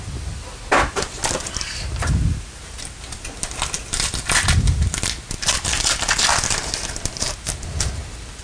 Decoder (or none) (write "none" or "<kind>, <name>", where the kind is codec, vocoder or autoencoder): none